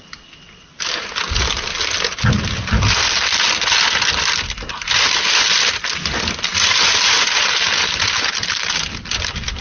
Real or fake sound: real